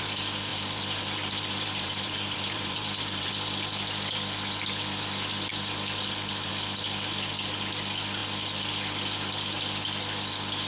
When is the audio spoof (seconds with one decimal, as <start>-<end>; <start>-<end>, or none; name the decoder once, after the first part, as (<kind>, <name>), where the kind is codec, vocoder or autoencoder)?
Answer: 0.5-3.3 (vocoder, BigVGAN v2)